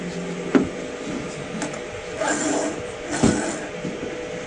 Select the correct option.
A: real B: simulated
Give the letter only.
A